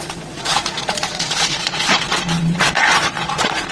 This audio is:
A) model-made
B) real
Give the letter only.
A